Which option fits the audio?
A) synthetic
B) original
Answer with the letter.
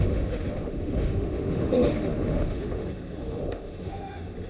A